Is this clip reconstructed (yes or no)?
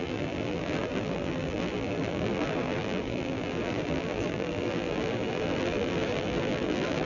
yes